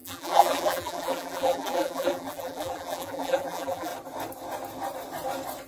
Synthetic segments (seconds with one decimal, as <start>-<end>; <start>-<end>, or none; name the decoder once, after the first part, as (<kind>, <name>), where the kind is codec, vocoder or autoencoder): 0.0-3.9 (vocoder, BigVGAN v2)